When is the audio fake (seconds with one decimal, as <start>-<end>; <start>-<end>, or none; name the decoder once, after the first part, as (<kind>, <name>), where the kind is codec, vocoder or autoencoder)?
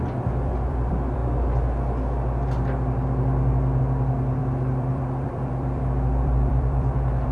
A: 0.0-1.2 (vocoder, BigVGAN v2); 3.8-7.3